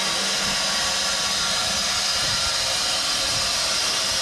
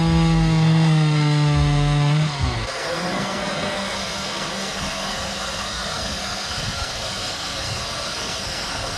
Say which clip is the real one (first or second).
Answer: first